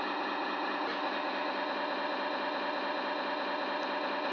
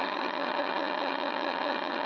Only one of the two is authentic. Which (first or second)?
first